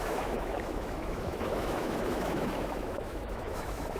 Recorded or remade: remade